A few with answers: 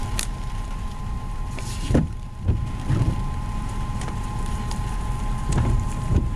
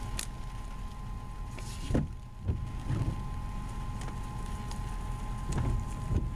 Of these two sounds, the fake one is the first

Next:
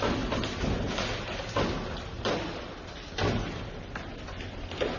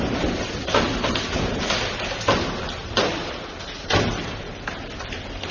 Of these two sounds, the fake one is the second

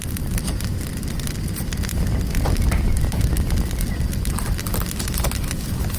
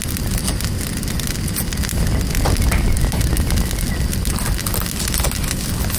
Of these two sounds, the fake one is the first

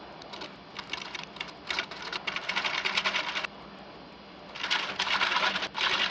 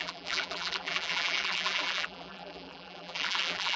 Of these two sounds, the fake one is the second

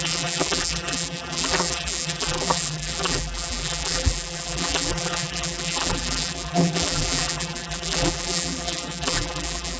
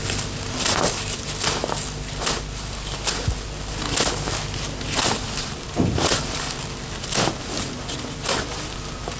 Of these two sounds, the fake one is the first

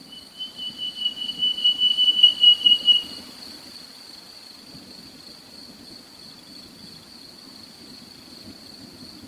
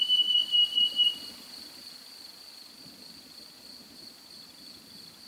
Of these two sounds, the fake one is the first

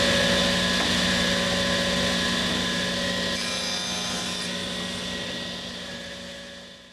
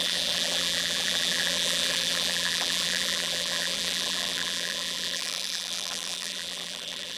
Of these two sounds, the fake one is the second